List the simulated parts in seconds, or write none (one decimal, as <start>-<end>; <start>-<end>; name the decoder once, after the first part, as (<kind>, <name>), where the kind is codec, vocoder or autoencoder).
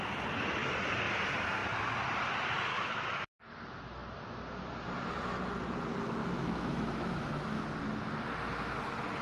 2.7-3.4 (autoencoder, DAC-VAE); 6.2-7.6